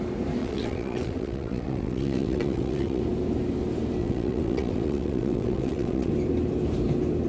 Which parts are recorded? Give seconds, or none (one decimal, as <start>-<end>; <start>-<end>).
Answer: 0.0-0.4; 3.0-4.0; 6.1-7.3